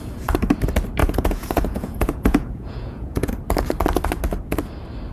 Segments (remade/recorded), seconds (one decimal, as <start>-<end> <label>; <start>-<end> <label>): 0.0-1.0 recorded; 1.0-3.3 remade; 3.3-5.1 recorded